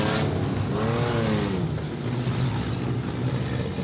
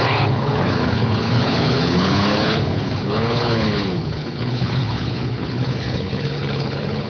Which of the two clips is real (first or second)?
first